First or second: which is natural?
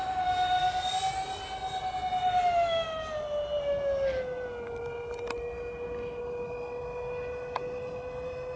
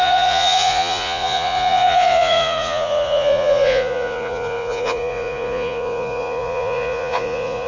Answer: first